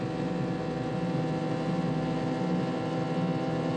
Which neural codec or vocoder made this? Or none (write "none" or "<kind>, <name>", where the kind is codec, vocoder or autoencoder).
none